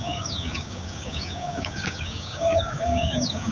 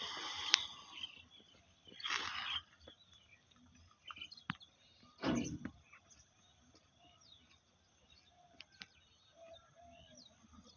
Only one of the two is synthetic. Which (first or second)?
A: first